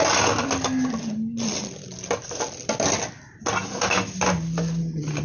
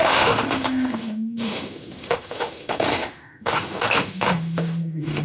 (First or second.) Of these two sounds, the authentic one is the first